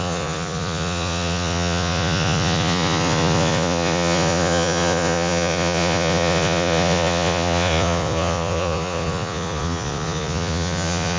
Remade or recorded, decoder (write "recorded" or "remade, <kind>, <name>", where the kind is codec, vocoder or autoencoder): remade, vocoder, Vocos